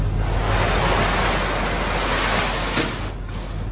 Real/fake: real